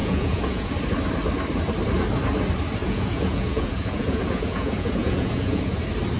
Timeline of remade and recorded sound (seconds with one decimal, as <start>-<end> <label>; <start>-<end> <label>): 0.0-0.7 remade; 0.7-2.8 recorded; 2.8-5.8 remade; 5.8-6.2 recorded